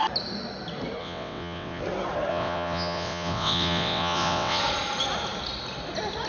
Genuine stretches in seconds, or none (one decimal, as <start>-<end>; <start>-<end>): 0.0-1.0; 1.8-2.3; 4.6-6.3